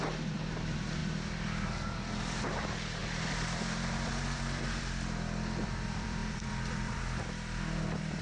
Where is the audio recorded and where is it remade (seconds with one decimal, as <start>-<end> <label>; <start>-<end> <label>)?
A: 0.0-1.0 remade; 1.0-2.4 recorded; 2.4-8.2 remade